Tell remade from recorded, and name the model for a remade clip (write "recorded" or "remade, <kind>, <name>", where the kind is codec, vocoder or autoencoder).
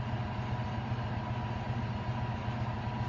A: recorded